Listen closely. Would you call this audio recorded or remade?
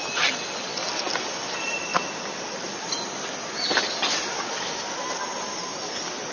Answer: recorded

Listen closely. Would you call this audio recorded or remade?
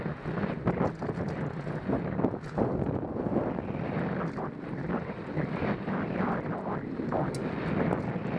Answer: recorded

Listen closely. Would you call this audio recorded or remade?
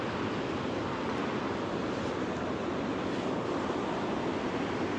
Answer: recorded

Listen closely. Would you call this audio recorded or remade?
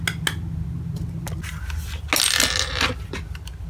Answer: recorded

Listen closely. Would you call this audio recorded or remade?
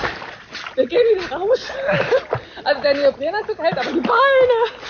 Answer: recorded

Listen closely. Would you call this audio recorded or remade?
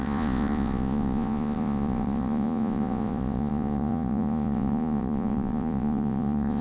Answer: remade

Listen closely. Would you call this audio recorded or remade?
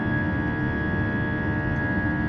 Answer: recorded